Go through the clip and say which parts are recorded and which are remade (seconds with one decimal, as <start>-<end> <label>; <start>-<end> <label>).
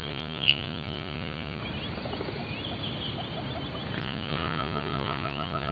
0.0-1.6 remade; 1.6-4.0 recorded; 4.0-5.7 remade